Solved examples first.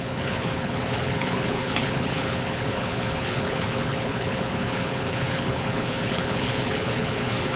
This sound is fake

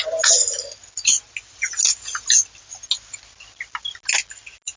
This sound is real